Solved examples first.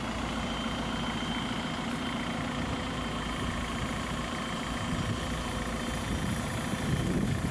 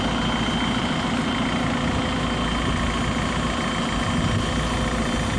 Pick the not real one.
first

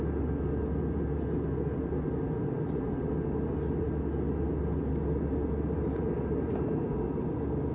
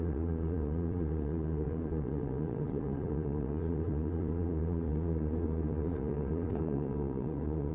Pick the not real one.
second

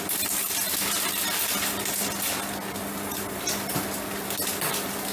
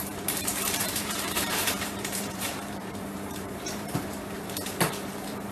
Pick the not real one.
second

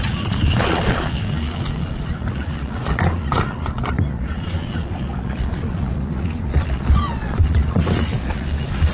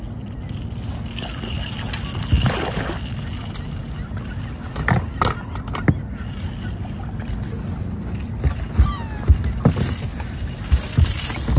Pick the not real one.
first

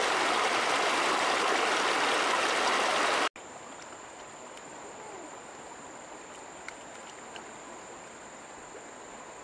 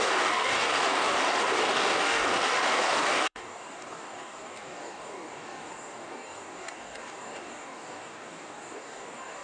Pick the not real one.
second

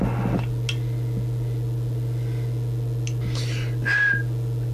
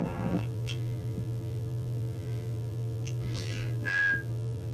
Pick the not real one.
second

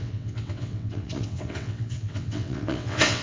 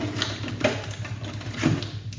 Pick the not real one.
first